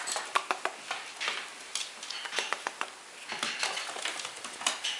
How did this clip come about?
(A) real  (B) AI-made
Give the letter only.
A